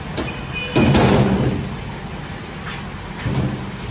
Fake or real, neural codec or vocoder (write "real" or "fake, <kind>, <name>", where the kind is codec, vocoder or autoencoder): real